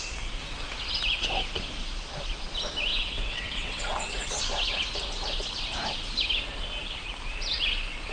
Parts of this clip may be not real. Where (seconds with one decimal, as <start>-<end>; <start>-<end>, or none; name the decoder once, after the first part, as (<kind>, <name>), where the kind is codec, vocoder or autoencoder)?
2.9-4.4 (vocoder, WaveNeXt)